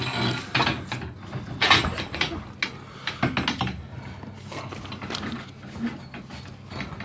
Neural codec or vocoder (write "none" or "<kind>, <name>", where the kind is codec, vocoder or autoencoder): none